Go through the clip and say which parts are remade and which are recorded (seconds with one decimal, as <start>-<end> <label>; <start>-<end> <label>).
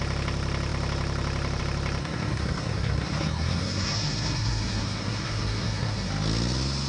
0.0-2.0 recorded; 2.0-6.1 remade; 6.1-6.9 recorded